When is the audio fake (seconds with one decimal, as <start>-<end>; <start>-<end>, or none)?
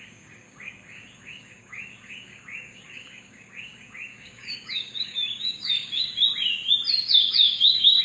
0.0-6.1; 7.0-8.0